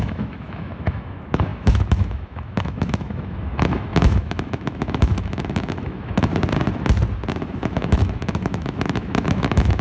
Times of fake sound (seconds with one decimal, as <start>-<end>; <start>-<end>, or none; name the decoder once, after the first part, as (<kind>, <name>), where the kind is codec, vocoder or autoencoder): 0.0-6.3 (autoencoder, DAC-VAE); 7.4-9.8